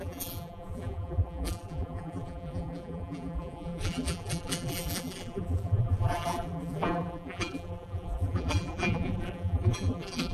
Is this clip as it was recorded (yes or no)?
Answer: no